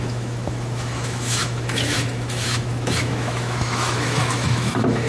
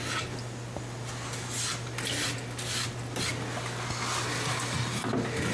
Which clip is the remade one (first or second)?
first